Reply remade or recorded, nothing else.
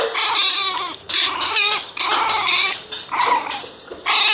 recorded